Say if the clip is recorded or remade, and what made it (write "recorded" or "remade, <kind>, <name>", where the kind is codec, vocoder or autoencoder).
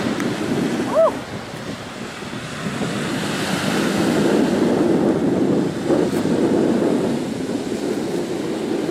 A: recorded